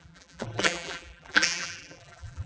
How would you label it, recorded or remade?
remade